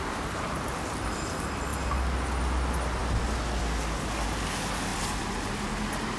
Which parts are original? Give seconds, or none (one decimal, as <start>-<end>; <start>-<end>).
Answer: 0.0-6.2